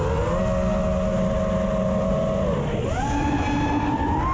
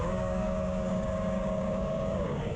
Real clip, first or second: first